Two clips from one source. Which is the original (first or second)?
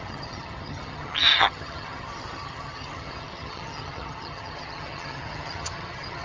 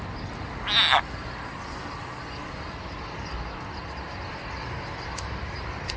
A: second